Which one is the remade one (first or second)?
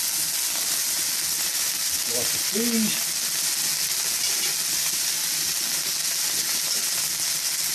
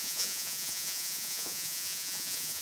second